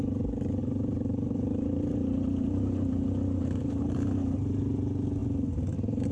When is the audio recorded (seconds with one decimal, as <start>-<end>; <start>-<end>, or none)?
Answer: 0.0-0.6; 3.8-6.1